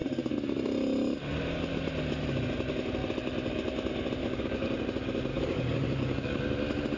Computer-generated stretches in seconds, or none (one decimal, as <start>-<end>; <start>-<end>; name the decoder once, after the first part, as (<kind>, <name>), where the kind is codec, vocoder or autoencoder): 4.2-4.7 (codec, DAC); 5.3-6.4